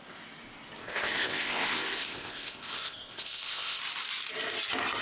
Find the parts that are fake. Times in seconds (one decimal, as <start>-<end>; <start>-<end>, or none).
0.8-3.8